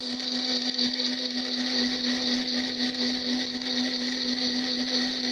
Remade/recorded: recorded